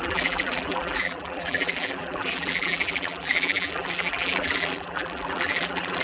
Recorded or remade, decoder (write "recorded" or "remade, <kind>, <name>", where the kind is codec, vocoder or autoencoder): remade, vocoder, BigVGAN v2